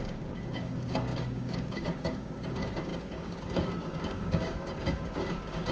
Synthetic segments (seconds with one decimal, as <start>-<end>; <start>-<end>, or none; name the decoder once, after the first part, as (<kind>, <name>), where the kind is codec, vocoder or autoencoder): 0.0-5.7 (codec, DAC)